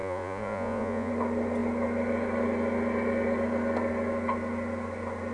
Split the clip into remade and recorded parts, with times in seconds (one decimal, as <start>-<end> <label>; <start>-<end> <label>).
0.0-1.1 remade; 1.1-5.3 recorded